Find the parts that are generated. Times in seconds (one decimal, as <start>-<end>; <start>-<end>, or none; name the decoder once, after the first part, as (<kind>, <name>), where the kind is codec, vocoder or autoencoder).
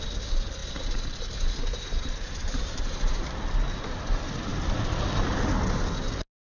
0.6-3.4 (vocoder, BigVGAN v2)